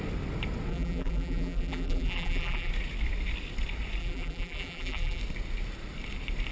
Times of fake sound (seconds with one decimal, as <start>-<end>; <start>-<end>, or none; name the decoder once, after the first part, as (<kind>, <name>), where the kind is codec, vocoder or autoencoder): 0.7-2.7 (vocoder, BigVGAN v2); 4.0-5.2